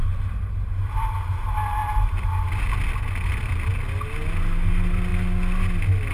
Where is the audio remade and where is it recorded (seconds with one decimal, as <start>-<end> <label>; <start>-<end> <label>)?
0.0-6.1 recorded